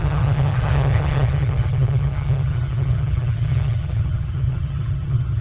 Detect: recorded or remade remade